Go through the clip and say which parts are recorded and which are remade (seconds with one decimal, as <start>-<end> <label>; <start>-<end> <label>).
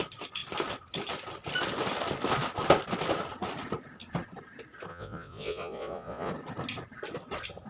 0.0-4.9 recorded; 4.9-6.3 remade; 6.3-7.7 recorded